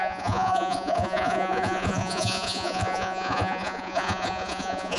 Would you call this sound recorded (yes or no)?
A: no